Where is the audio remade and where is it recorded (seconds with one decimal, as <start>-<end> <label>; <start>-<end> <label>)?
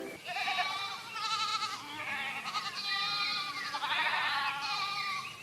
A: 0.0-5.4 recorded